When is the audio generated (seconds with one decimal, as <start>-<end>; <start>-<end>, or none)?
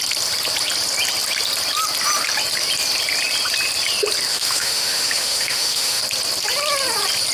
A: 4.3-6.0